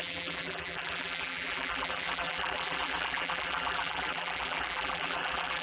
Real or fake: fake